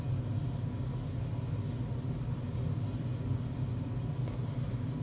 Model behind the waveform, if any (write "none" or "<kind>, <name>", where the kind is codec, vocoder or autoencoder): none